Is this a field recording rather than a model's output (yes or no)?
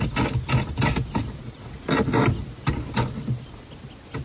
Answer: yes